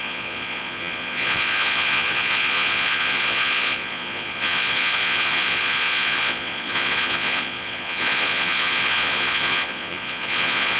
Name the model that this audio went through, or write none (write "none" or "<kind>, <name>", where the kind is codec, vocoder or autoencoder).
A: vocoder, Vocos